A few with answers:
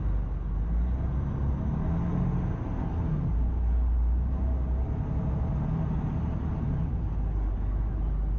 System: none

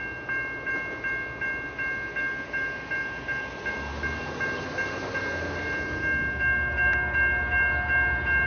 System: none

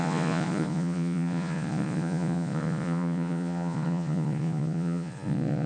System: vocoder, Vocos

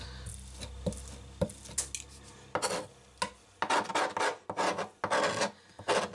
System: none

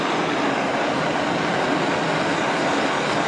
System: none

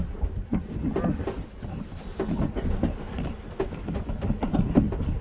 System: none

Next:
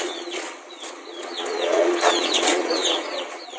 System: vocoder, Vocos